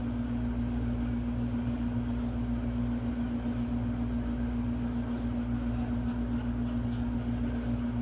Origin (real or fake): real